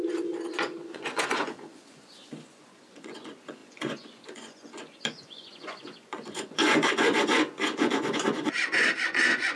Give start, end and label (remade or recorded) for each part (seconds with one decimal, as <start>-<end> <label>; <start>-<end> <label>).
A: 0.0-9.6 remade